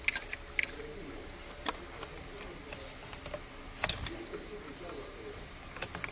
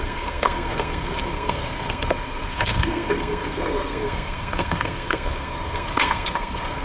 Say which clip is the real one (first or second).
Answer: first